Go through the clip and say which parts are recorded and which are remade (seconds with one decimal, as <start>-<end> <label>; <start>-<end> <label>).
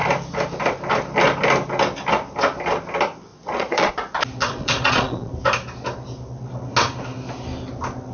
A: 0.0-3.3 recorded; 3.3-3.9 remade; 3.9-4.4 recorded; 4.4-5.3 remade; 5.3-8.1 recorded